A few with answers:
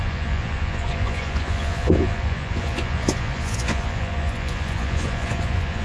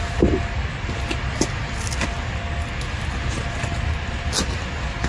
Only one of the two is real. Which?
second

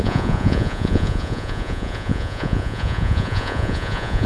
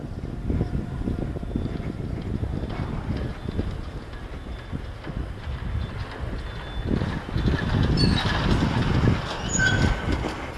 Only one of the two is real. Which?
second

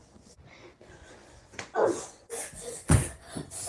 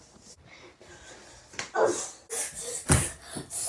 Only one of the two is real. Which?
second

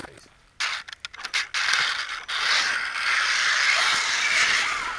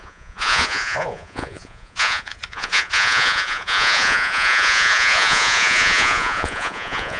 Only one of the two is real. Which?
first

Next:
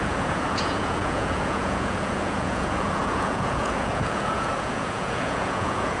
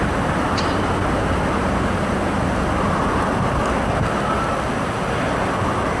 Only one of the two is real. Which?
second